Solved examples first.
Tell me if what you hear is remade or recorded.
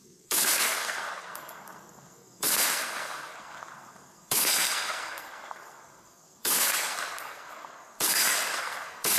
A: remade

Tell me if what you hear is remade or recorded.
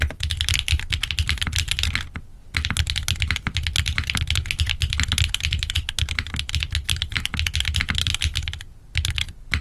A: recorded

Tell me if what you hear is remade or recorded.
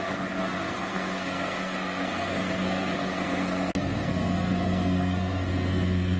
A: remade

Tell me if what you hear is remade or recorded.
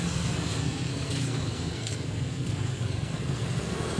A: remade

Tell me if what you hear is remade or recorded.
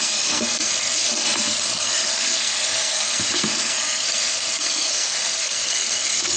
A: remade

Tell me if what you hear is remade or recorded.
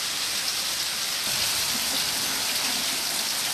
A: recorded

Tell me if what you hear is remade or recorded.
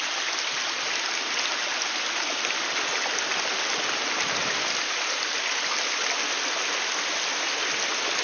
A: recorded